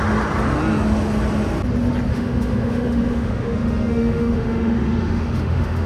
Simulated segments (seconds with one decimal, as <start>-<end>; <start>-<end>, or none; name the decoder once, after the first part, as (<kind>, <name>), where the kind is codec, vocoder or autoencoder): 2.1-5.9 (autoencoder, DAC-VAE)